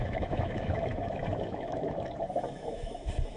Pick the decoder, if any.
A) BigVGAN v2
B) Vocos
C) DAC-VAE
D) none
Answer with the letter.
C